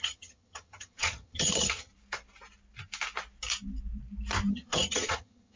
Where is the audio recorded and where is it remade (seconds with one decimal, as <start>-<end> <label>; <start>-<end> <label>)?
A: 0.0-1.9 remade; 1.9-4.5 recorded; 4.5-5.6 remade